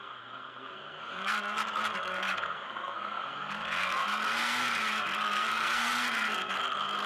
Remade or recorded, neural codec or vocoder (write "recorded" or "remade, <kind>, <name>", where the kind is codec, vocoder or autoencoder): remade, codec, SNAC